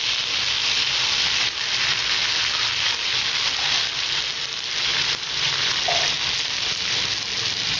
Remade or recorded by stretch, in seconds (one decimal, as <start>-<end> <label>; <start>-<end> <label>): 0.0-4.9 recorded; 4.9-6.1 remade; 6.1-7.8 recorded